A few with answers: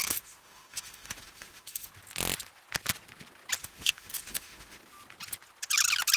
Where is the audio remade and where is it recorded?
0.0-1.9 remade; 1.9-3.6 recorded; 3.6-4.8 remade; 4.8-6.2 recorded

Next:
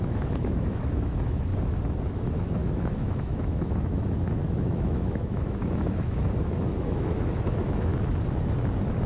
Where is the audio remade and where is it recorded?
0.0-1.5 remade; 1.5-2.1 recorded; 2.1-7.9 remade; 7.9-9.1 recorded

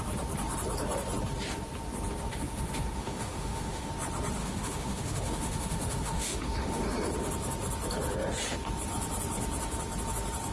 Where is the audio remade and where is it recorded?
0.0-2.3 recorded; 2.3-3.9 remade; 3.9-4.4 recorded; 4.4-6.8 remade; 6.8-10.5 recorded

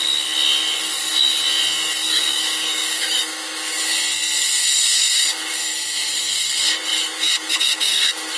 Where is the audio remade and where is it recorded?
0.0-2.0 recorded; 2.0-4.0 remade; 4.0-4.6 recorded; 4.6-6.5 remade; 6.5-6.9 recorded; 6.9-8.4 remade

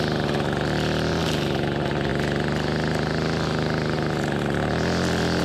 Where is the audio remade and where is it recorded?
0.0-5.4 recorded

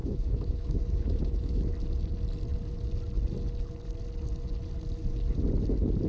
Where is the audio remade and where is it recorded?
0.0-1.6 remade; 1.6-6.1 recorded

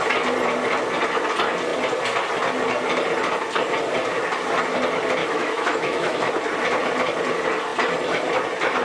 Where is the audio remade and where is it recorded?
0.0-5.2 recorded; 5.2-6.3 remade; 6.3-8.8 recorded